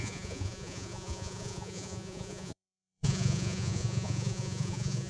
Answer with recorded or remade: remade